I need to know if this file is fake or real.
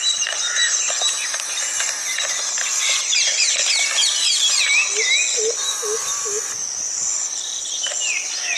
real